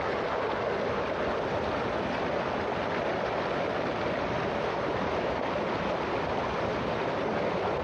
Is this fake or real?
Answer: real